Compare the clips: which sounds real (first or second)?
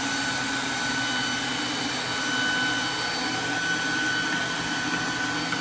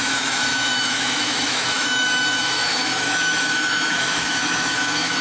first